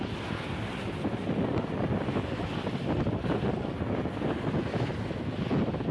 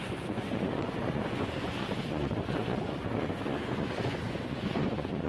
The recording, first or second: first